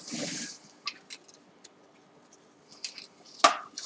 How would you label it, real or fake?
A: real